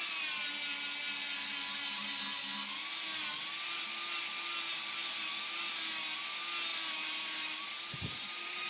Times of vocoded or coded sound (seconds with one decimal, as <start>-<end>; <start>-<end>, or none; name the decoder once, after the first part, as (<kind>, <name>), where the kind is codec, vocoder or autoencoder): 5.0-5.7 (vocoder, BigVGAN v2); 6.7-8.7